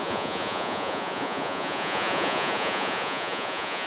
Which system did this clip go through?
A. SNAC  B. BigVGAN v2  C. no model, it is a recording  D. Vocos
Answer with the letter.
D